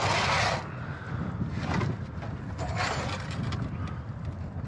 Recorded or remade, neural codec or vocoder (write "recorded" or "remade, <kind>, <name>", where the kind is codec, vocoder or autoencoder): recorded